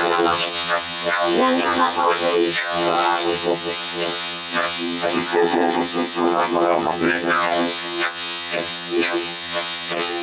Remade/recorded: remade